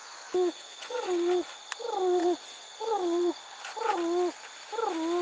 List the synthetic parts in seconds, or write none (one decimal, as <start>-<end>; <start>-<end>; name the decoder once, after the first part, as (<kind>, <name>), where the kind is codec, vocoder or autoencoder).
0.0-1.6 (vocoder, Vocos); 2.2-3.3